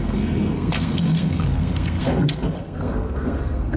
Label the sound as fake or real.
fake